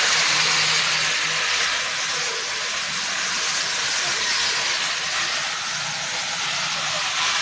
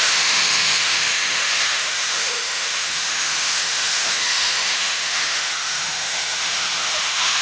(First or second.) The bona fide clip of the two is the first